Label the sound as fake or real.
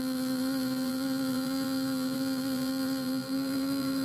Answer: fake